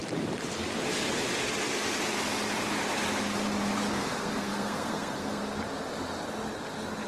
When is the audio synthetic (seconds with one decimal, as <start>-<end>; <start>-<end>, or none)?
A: 3.9-5.4